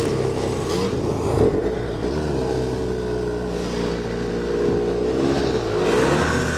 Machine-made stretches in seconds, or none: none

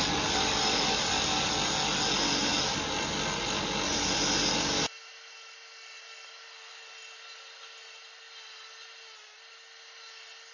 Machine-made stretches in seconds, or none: none

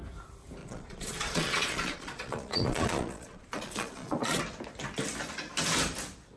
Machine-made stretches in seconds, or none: 0.6-4.4 (vocoder, Vocos)

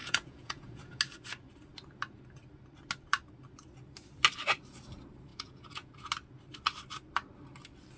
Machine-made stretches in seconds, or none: 0.0-1.0 (vocoder, Vocos); 5.3-5.9

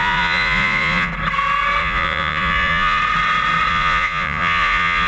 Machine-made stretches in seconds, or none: 0.0-1.1 (vocoder, Vocos); 1.8-3.0; 3.7-5.1

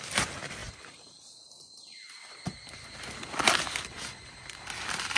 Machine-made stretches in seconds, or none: none

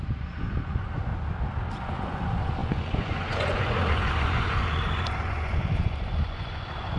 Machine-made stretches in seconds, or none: 0.0-1.1 (vocoder, Vocos); 1.8-7.0